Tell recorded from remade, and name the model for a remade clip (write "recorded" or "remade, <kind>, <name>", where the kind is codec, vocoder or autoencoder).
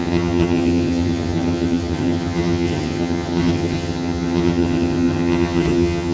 remade, vocoder, HiFi-GAN